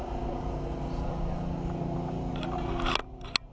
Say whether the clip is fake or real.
real